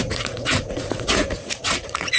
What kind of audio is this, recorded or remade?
remade